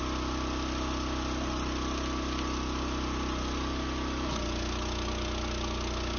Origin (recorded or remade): recorded